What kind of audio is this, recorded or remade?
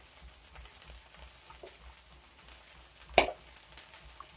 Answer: recorded